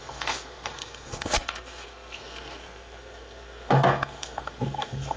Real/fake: fake